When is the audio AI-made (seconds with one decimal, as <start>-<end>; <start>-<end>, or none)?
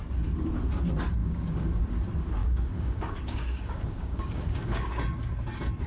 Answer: 1.2-1.8; 2.4-4.8